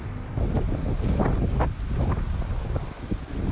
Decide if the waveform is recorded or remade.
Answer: recorded